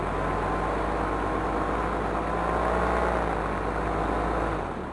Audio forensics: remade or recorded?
recorded